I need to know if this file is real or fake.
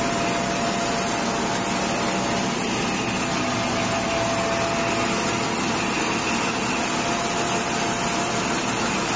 real